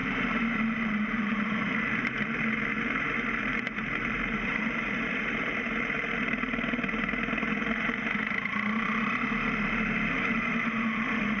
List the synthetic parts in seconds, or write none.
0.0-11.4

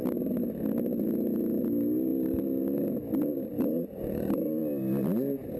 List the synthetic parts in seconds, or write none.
3.5-4.6

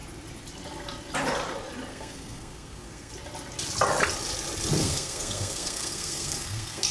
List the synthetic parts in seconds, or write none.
1.9-3.1; 4.8-6.9

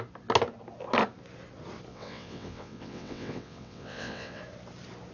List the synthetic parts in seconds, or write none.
1.9-4.4

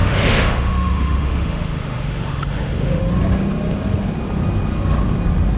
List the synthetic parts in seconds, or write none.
0.0-3.0

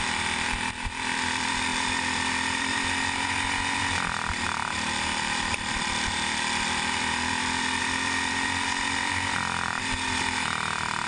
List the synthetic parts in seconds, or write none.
0.0-11.1